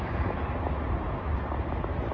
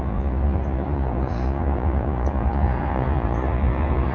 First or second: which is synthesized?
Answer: second